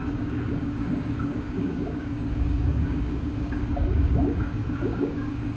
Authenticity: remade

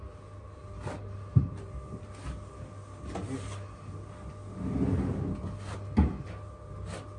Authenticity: recorded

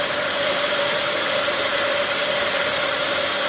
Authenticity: recorded